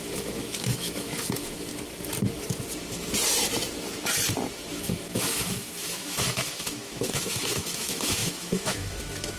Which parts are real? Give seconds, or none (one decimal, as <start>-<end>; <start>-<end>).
1.7-4.7